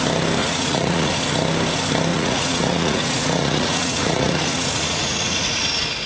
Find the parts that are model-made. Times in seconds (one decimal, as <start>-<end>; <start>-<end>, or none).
0.4-1.1; 2.1-5.6

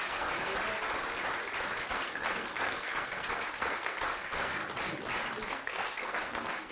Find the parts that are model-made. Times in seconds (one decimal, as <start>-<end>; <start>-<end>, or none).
0.0-0.5; 1.9-4.6; 5.5-6.7

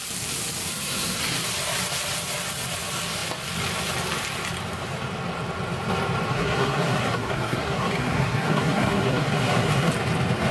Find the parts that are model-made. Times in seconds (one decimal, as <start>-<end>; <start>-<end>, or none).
0.7-1.2; 6.3-9.9

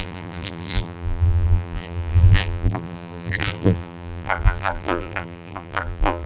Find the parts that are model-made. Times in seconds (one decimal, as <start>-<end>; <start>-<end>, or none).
0.0-6.3

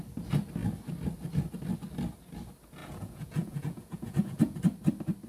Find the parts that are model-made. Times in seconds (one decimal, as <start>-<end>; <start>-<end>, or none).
2.8-4.6